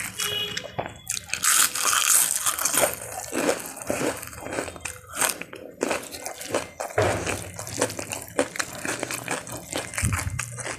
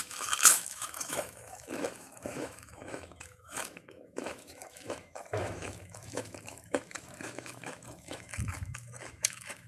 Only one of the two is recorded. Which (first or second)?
first